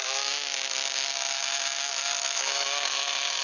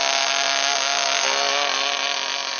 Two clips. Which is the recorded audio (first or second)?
second